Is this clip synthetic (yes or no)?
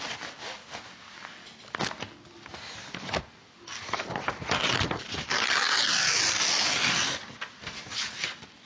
no